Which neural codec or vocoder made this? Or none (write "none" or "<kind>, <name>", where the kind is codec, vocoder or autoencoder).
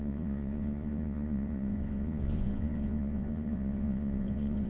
vocoder, Vocos